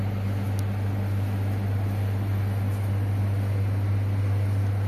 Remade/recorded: recorded